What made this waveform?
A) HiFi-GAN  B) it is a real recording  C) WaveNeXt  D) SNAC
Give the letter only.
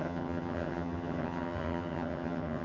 A